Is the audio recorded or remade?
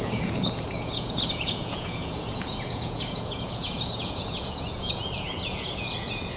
remade